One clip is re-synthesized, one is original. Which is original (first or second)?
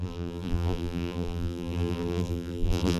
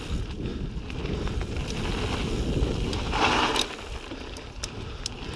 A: second